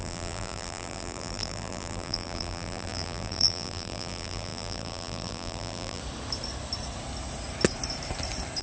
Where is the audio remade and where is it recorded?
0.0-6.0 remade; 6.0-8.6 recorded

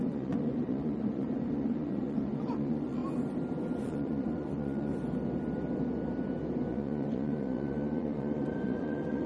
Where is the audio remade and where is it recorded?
0.0-3.0 remade; 3.0-3.8 recorded; 3.8-4.9 remade; 4.9-6.7 recorded; 6.7-9.3 remade

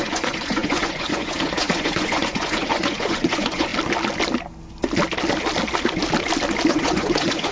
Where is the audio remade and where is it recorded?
0.0-3.7 remade; 3.7-6.7 recorded; 6.7-7.5 remade